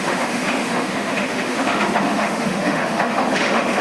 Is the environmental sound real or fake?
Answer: fake